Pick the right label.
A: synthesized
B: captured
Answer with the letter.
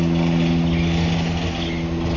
B